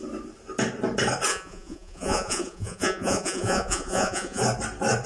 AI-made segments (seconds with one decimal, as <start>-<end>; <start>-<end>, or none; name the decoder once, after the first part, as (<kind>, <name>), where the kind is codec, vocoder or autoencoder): 1.3-4.4 (vocoder, Vocos)